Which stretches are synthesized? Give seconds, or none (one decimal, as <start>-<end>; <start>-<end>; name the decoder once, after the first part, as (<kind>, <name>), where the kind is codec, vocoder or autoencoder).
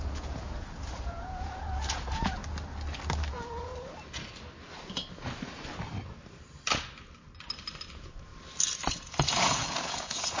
0.0-2.4 (vocoder, Vocos); 3.3-3.7; 7.9-8.3; 8.9-10.4